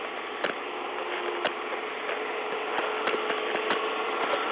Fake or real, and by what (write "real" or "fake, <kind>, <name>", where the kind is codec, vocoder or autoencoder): real